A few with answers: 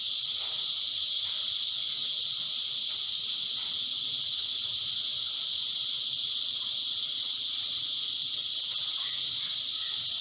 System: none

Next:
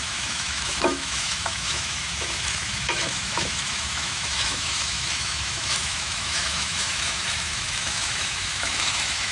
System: autoencoder, DAC-VAE